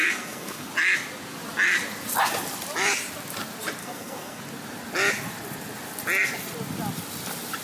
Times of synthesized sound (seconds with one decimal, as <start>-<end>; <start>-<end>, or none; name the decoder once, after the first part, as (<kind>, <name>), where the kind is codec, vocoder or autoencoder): 0.0-0.7 (codec, SNAC); 3.8-4.4